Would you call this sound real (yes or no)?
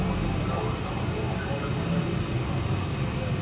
yes